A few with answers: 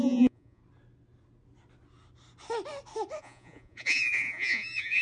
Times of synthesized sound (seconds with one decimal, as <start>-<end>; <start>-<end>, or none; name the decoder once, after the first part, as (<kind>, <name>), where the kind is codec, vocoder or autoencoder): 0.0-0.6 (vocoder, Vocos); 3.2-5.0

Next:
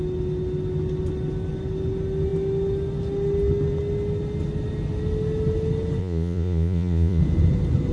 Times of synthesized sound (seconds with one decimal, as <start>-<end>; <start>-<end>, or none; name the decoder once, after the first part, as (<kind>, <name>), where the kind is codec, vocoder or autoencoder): 6.0-7.2 (vocoder, Vocos)

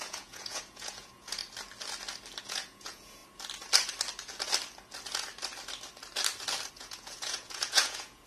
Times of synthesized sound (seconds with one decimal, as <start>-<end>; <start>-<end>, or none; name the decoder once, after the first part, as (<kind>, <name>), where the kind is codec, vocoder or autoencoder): 0.0-1.4 (vocoder, Vocos); 2.4-3.2; 6.7-8.3

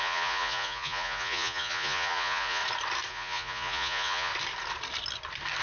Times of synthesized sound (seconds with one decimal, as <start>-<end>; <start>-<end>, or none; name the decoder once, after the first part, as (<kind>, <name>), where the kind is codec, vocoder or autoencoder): 0.0-2.6 (vocoder, Vocos); 3.1-4.3

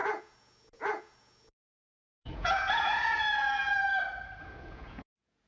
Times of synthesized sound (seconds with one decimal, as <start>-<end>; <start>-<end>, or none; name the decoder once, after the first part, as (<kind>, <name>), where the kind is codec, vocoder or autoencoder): 0.0-3.9 (vocoder, Vocos); 4.4-5.5

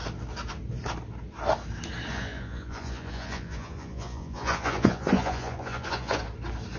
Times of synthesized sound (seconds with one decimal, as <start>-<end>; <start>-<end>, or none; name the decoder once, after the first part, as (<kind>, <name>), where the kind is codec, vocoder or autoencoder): 2.1-6.2 (vocoder, Vocos)